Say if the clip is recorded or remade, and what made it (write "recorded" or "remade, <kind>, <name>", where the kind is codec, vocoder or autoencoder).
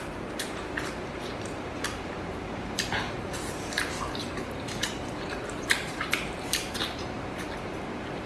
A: remade, vocoder, BigVGAN v2